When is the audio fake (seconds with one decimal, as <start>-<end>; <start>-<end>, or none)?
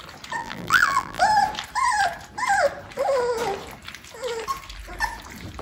0.4-1.2